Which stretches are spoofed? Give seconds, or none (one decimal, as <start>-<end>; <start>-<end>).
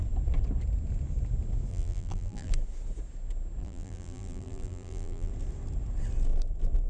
1.7-2.5; 3.6-5.3